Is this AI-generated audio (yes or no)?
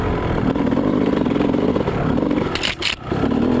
no